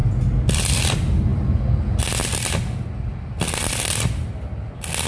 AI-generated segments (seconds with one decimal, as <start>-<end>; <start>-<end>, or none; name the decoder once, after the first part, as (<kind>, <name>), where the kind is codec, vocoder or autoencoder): none

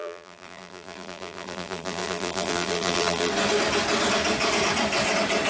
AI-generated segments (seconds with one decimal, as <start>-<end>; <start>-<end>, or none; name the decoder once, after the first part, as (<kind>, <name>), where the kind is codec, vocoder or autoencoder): 0.0-3.3 (vocoder, BigVGAN v2)

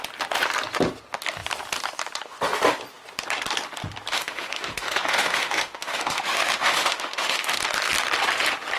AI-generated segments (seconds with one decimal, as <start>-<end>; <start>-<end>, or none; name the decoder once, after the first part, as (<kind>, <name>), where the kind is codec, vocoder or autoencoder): 4.1-7.6 (autoencoder, DAC-VAE)

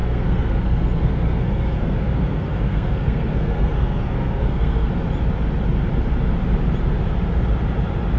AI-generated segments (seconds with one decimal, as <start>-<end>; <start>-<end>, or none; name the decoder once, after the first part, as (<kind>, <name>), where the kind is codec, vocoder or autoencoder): 0.0-4.9 (codec, SNAC)

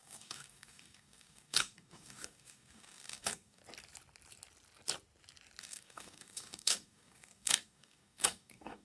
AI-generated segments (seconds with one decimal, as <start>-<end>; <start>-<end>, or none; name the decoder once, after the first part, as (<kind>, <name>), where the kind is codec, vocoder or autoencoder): 0.0-3.6 (codec, DAC); 5.6-8.8